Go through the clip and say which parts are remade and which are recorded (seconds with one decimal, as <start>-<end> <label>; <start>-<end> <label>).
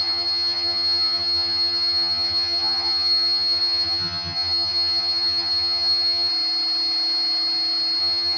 0.0-6.3 remade; 6.3-8.0 recorded; 8.0-8.4 remade